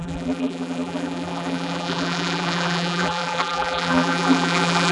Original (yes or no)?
no